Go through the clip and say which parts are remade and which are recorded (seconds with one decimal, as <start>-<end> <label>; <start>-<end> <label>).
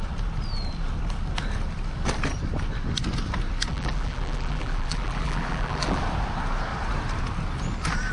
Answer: 0.0-3.7 recorded; 3.7-6.0 remade; 6.0-8.1 recorded